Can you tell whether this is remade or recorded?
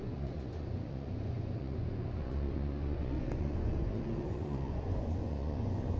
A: remade